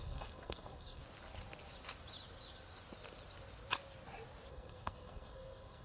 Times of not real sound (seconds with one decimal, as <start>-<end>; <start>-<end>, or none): 0.0-1.0; 4.5-5.8

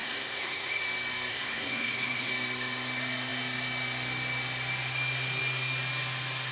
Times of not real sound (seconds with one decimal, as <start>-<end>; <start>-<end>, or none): 0.0-0.8; 1.3-2.3

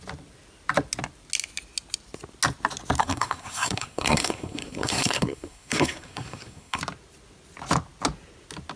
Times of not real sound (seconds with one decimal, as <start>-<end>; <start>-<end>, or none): 3.0-6.8